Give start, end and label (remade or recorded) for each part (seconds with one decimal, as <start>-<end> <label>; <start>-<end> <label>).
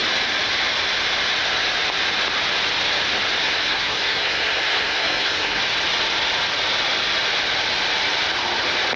0.0-3.4 recorded; 3.4-5.6 remade; 5.6-9.0 recorded